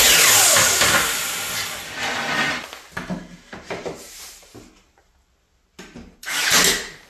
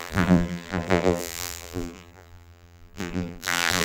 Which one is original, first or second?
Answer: first